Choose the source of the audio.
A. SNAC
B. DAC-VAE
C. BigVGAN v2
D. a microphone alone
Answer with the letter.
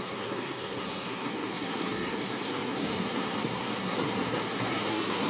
A